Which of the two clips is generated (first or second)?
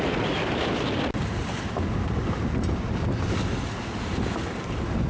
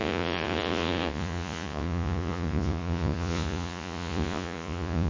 second